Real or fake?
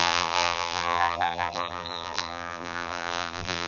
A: fake